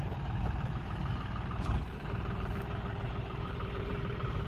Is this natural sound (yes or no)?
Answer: no